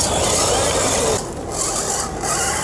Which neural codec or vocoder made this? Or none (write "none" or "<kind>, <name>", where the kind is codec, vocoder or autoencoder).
none